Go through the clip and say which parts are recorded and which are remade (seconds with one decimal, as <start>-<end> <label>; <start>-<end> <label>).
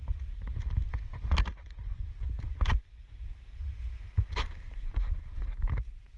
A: 0.0-6.2 recorded